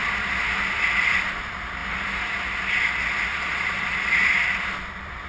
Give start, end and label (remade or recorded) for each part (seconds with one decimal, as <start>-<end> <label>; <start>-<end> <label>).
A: 0.0-3.3 recorded; 3.3-3.9 remade; 3.9-5.3 recorded